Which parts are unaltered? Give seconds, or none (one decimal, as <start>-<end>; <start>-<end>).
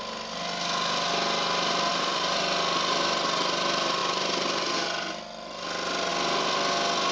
0.0-1.9; 2.4-7.1